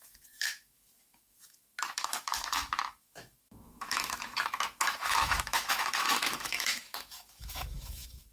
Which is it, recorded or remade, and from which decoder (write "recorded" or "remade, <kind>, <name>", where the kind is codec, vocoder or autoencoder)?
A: remade, autoencoder, DAC-VAE